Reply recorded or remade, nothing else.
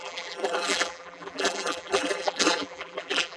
remade